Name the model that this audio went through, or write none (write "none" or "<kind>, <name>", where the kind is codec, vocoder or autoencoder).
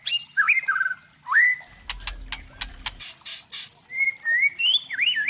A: none